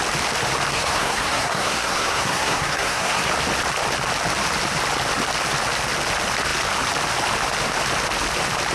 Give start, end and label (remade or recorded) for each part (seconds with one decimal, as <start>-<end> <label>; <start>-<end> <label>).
0.0-0.7 recorded; 0.7-3.3 remade; 3.3-8.7 recorded